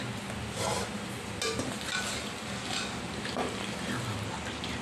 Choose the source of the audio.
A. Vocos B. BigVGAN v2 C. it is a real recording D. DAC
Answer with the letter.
C